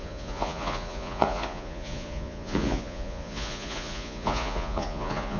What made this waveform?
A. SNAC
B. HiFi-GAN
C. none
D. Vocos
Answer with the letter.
D